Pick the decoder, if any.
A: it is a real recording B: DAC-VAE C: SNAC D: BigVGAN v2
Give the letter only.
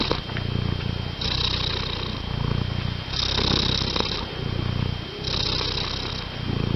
A